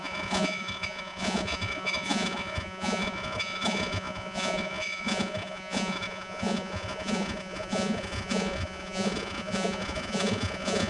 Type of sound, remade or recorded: remade